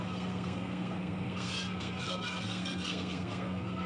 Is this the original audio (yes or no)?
no